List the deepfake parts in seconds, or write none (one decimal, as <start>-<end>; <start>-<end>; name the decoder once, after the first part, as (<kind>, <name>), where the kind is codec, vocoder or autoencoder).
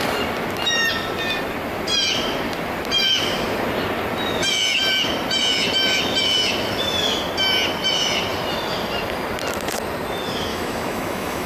10.5-11.5 (autoencoder, DAC-VAE)